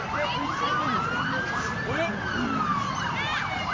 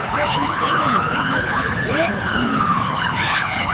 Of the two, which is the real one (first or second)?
first